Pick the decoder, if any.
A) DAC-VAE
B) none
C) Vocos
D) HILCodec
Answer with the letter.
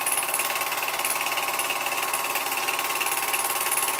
B